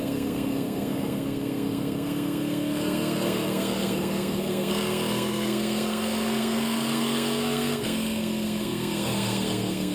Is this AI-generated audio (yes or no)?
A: yes